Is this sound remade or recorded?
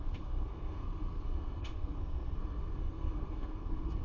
remade